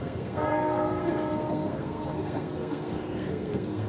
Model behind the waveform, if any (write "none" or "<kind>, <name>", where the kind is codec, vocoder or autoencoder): codec, SNAC